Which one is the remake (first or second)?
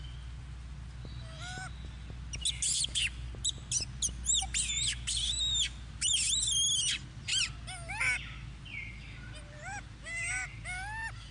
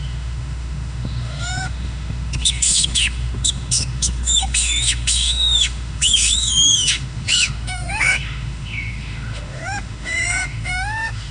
second